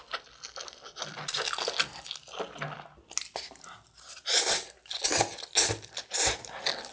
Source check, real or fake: real